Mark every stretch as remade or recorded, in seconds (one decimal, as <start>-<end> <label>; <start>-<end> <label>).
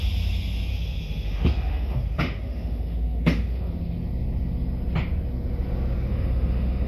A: 0.0-0.7 recorded; 0.7-3.7 remade; 3.7-6.1 recorded; 6.1-6.9 remade